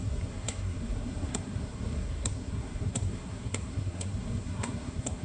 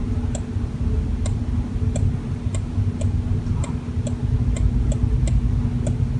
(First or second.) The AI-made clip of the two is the first